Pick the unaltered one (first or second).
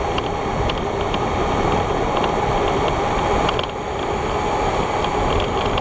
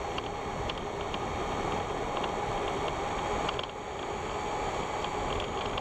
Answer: second